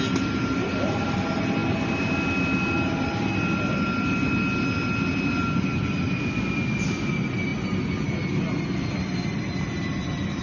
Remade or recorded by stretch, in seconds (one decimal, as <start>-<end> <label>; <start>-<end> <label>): 0.0-10.4 recorded